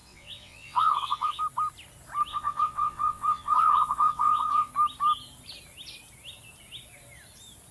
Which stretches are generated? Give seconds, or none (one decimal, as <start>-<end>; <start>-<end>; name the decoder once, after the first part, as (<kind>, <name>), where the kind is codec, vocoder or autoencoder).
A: 0.0-1.4 (vocoder, WaveNeXt); 2.3-4.7